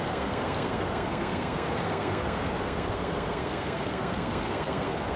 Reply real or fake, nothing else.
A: fake